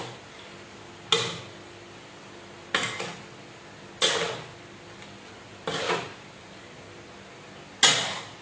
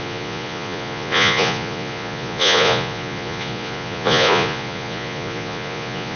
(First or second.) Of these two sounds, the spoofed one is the second